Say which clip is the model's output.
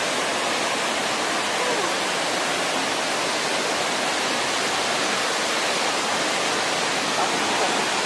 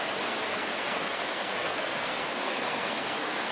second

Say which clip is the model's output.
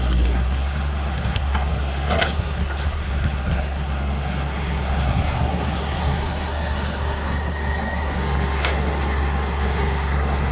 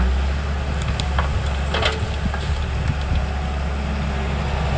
first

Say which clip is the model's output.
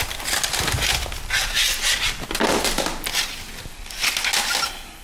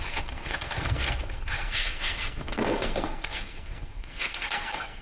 second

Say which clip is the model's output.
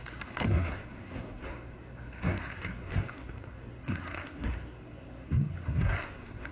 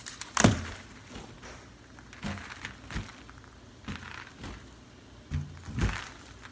first